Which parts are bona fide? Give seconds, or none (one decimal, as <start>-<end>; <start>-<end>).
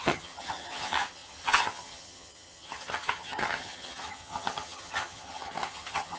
none